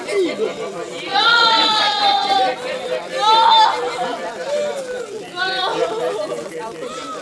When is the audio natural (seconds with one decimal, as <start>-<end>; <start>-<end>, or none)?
0.0-1.1; 2.4-7.2